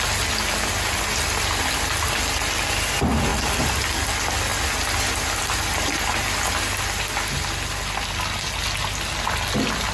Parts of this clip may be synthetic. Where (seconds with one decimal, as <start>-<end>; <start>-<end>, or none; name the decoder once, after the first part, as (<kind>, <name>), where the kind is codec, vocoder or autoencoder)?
none